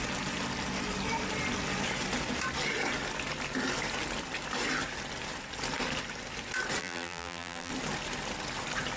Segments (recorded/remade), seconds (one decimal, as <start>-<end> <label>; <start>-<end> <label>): 0.0-6.8 recorded; 6.8-7.7 remade; 7.7-9.0 recorded